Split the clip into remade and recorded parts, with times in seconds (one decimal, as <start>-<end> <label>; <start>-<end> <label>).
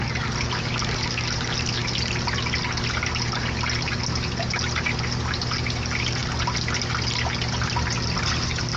0.0-8.8 recorded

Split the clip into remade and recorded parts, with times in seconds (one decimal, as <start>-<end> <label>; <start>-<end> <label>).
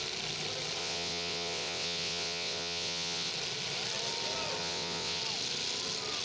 0.0-0.8 recorded; 0.8-3.3 remade; 3.3-4.6 recorded; 4.6-5.2 remade; 5.2-6.2 recorded